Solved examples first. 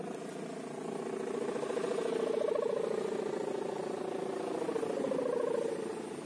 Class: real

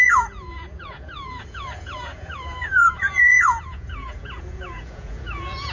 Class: fake